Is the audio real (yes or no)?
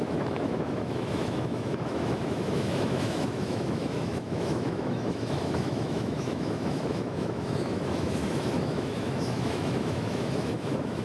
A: no